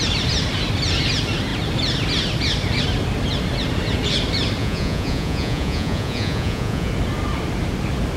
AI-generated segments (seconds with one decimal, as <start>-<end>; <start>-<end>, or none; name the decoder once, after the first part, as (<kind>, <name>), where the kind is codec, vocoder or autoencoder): 4.6-6.9 (vocoder, Vocos)